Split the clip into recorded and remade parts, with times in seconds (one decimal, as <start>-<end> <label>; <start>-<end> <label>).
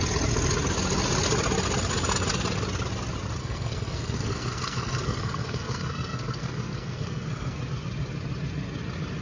0.0-3.4 recorded; 3.4-7.6 remade; 7.6-9.2 recorded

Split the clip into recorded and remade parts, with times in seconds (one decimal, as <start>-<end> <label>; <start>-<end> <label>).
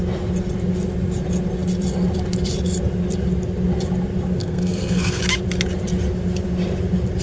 0.0-4.4 recorded; 4.4-5.2 remade; 5.2-7.2 recorded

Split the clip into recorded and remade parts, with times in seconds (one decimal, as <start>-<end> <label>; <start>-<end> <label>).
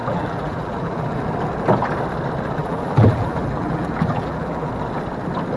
0.0-1.2 remade; 1.2-2.6 recorded; 2.6-4.7 remade; 4.7-5.6 recorded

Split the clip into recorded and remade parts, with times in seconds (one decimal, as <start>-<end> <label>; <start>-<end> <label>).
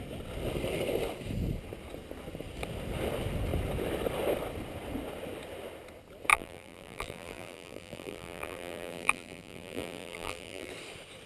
0.0-6.3 recorded; 6.3-10.7 remade; 10.7-11.3 recorded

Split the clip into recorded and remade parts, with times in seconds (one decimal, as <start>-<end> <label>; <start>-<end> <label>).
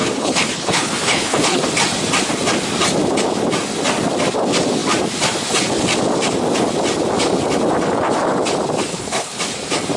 0.0-1.6 remade; 1.6-8.9 recorded; 8.9-9.4 remade; 9.4-10.0 recorded